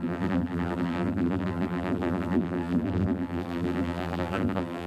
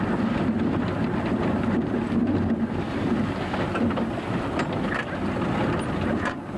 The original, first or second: second